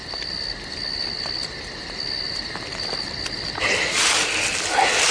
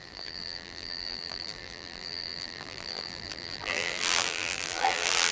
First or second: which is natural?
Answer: first